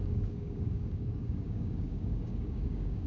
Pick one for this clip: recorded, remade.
remade